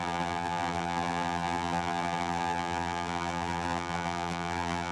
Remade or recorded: remade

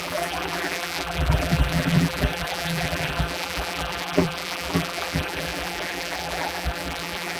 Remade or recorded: remade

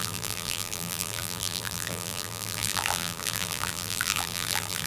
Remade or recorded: remade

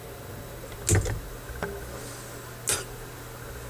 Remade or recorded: recorded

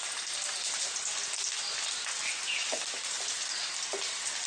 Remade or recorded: recorded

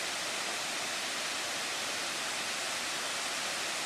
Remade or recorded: recorded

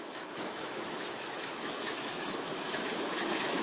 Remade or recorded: remade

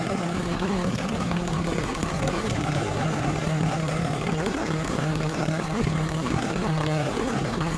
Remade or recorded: remade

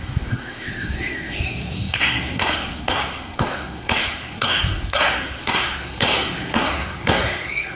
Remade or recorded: remade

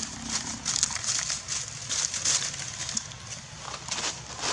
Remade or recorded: recorded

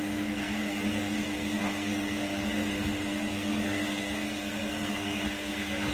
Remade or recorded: remade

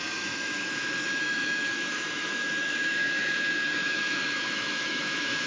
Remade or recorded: remade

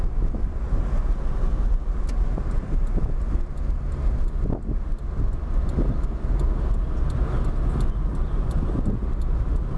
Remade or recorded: recorded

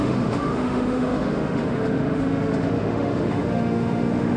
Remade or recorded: remade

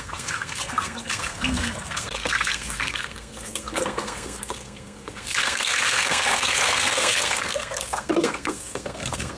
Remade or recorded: remade